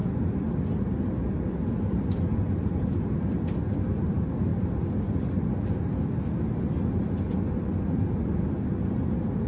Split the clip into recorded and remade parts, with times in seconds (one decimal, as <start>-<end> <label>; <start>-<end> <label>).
0.0-9.5 recorded